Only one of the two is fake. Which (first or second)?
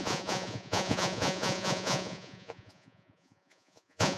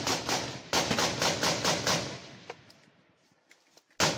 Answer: first